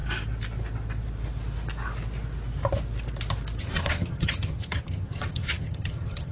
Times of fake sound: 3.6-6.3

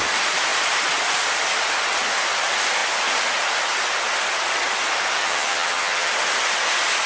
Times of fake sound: 5.2-6.1